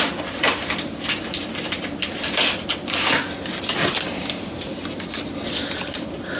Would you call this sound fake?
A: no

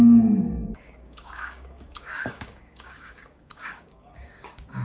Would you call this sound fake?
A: yes